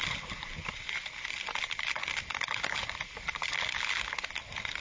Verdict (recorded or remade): recorded